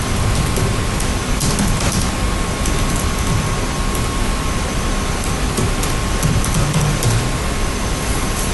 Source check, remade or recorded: recorded